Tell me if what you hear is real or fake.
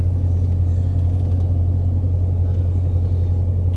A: real